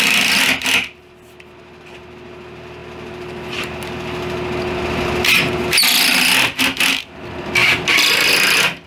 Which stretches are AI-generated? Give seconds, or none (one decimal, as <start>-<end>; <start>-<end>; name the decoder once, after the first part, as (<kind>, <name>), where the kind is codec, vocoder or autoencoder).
none